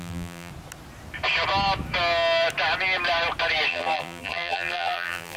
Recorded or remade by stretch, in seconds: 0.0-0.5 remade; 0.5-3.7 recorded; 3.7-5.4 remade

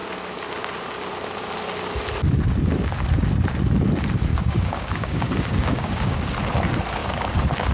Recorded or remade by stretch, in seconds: 0.0-4.3 recorded; 4.3-6.3 remade; 6.3-7.0 recorded; 7.0-7.7 remade

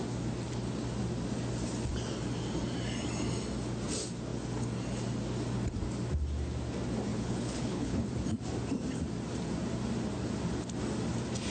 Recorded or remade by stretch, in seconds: 0.0-7.1 recorded; 7.1-8.1 remade; 8.1-11.5 recorded